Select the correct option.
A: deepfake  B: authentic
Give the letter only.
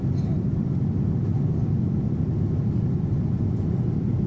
B